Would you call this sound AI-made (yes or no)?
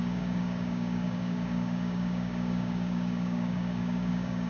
yes